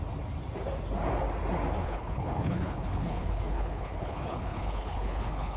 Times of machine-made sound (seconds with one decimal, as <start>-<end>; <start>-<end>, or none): 1.8-5.6